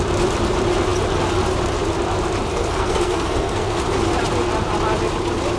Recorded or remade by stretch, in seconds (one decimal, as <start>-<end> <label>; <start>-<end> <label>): 0.0-2.5 recorded; 2.5-3.8 remade; 3.8-5.6 recorded